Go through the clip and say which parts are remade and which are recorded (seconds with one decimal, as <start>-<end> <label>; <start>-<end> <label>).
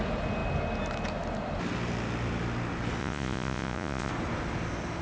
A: 0.0-3.0 recorded; 3.0-4.1 remade; 4.1-5.0 recorded